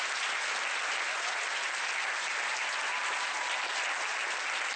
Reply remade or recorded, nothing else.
recorded